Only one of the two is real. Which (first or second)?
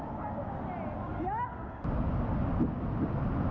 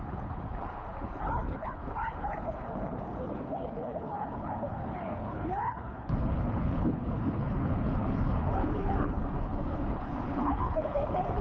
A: first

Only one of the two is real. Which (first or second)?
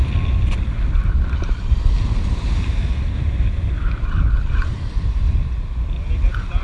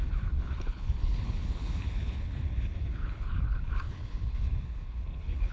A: first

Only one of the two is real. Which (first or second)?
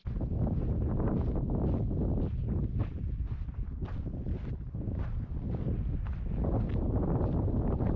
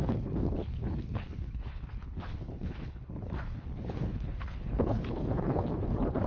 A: first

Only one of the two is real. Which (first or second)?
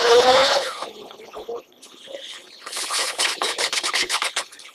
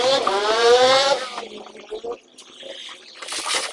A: second